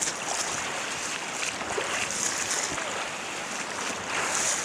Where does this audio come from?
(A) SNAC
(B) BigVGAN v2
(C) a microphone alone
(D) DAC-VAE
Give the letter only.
C